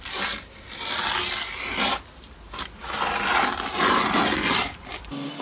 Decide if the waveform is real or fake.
real